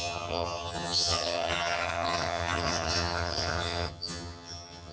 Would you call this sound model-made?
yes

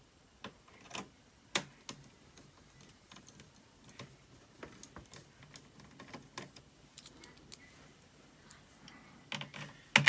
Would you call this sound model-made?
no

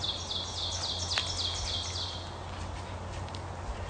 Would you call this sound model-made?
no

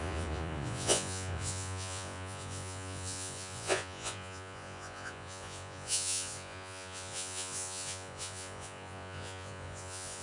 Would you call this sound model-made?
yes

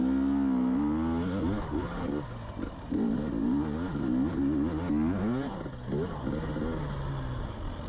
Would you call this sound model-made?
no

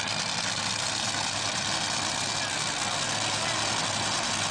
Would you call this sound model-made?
no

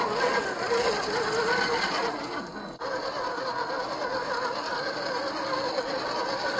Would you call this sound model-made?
no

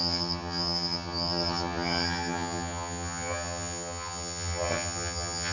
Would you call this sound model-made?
yes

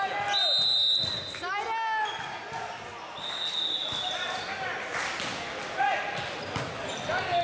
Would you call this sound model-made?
no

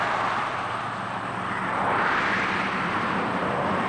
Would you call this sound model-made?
yes